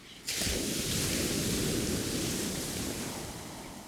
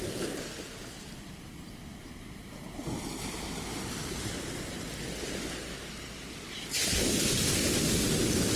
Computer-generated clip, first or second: first